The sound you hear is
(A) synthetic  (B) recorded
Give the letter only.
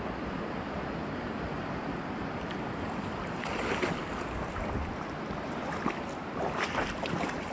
B